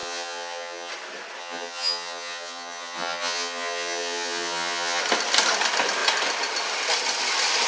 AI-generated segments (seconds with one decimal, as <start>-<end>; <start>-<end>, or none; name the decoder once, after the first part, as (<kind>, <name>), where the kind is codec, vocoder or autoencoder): 0.0-0.9 (vocoder, HiFi-GAN); 1.4-5.0

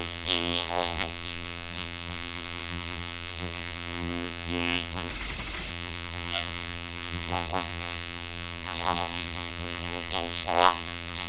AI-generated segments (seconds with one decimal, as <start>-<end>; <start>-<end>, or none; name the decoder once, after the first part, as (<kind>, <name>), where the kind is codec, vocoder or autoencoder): 0.0-5.1 (vocoder, BigVGAN v2); 5.7-11.3

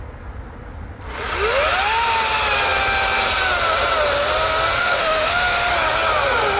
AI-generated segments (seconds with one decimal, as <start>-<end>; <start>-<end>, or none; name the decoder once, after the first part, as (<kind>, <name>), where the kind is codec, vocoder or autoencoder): 4.8-5.7 (autoencoder, DAC-VAE)